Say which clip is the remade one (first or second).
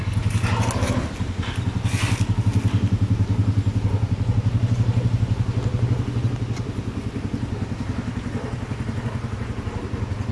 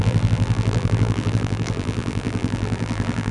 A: second